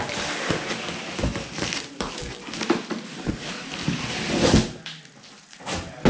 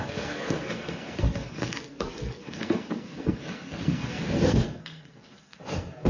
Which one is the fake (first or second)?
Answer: second